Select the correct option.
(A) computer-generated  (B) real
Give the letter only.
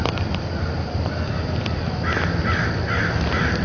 B